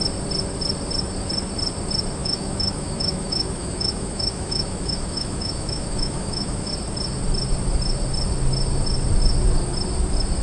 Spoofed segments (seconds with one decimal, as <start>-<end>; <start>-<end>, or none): 2.2-6.7